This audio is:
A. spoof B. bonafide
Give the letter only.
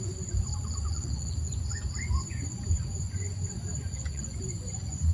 A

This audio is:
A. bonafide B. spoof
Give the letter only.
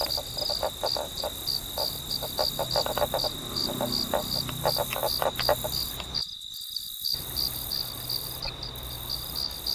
A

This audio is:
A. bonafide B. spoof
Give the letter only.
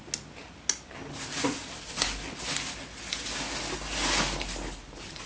A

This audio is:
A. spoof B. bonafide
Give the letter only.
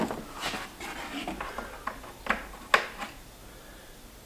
B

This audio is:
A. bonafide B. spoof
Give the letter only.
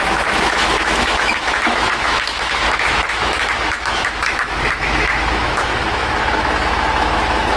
B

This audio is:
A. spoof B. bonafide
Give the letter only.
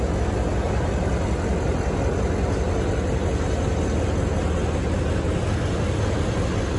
B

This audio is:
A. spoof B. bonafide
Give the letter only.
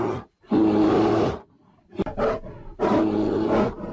B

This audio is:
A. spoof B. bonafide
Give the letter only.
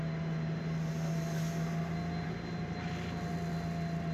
B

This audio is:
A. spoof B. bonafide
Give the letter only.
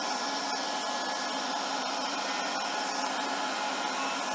B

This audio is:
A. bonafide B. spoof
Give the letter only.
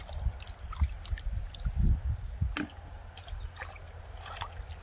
A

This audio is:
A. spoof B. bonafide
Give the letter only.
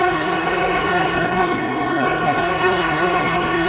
A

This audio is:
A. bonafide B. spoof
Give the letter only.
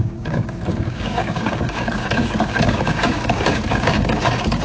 B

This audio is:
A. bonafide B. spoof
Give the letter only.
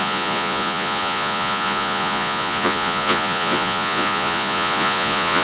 B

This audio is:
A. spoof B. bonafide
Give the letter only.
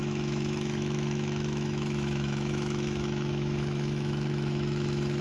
A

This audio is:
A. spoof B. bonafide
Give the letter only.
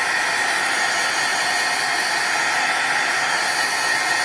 B